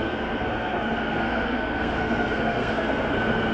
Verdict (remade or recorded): remade